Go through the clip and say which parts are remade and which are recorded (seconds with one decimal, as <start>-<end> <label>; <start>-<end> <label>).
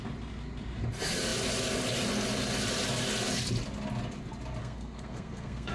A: 0.0-4.6 recorded; 4.6-5.7 remade